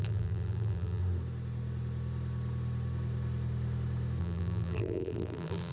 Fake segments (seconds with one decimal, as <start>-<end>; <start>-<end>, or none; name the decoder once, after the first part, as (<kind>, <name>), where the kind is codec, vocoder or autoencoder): 0.0-1.0 (vocoder, BigVGAN v2); 4.2-5.7